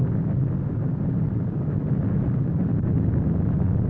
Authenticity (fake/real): real